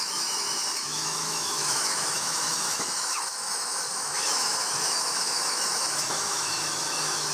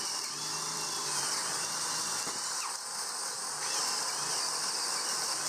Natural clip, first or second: second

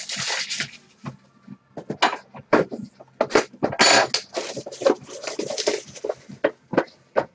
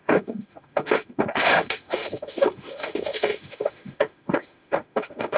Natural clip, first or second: first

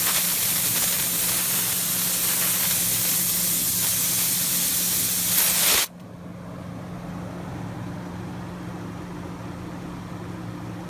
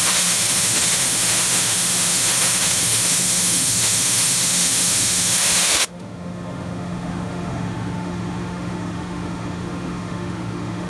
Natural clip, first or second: first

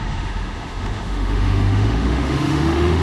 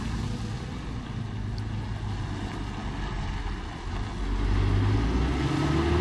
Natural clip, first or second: second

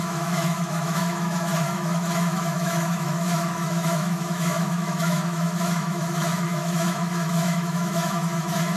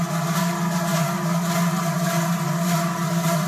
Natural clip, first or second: second